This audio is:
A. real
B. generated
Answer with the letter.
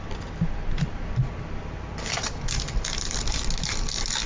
A